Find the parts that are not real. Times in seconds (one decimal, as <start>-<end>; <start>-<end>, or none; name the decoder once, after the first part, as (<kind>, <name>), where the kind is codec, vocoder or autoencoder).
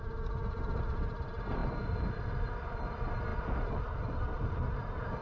1.6-2.8 (vocoder, BigVGAN v2); 3.3-5.2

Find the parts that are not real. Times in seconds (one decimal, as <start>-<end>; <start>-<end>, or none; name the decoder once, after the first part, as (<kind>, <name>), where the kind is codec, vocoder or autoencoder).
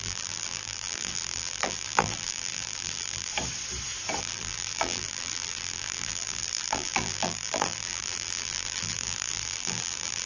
0.0-3.3 (vocoder, BigVGAN v2); 4.2-10.3